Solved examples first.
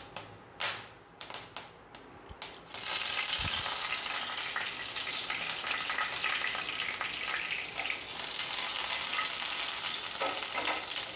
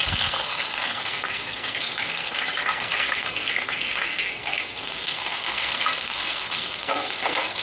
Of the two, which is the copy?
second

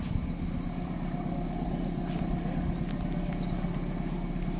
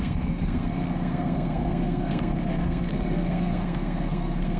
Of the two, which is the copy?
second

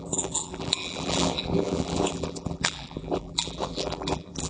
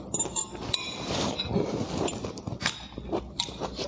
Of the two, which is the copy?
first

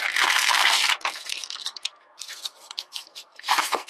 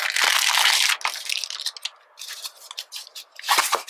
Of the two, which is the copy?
first